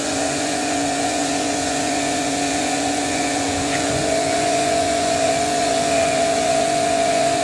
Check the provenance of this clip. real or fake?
fake